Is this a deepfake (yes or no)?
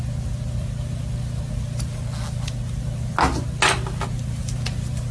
no